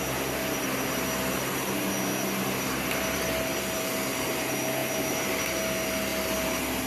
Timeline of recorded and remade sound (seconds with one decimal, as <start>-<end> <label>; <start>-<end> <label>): 0.0-6.9 recorded